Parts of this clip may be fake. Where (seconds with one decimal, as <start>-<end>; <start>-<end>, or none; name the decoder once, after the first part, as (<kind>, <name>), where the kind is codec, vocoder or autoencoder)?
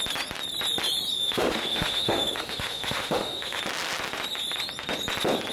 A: 1.2-3.6 (autoencoder, DAC-VAE)